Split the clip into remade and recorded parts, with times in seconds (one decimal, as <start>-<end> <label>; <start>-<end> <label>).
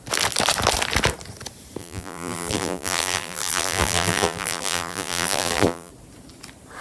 0.0-1.8 recorded; 1.8-5.9 remade; 5.9-6.8 recorded